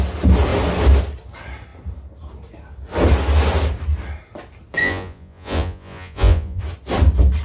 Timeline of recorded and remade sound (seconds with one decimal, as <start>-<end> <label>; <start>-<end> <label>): 0.0-4.8 recorded; 4.8-6.6 remade; 6.6-7.4 recorded